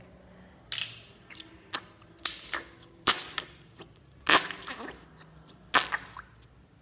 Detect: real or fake real